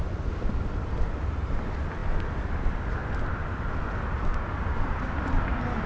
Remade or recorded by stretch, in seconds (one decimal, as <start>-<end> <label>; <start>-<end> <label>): 0.0-5.9 recorded